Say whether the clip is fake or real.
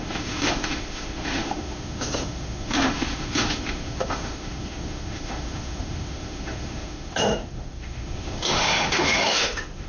fake